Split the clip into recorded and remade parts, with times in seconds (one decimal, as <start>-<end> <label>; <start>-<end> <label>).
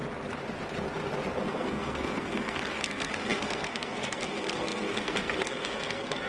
0.0-1.4 recorded; 1.4-6.3 remade